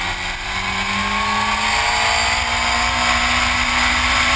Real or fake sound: real